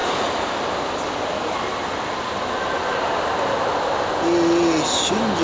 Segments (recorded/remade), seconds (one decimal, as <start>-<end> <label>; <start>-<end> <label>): 0.0-3.2 remade; 3.2-5.4 recorded